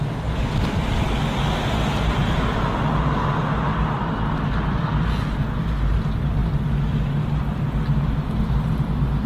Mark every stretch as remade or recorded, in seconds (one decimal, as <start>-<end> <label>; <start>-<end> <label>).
0.0-9.3 recorded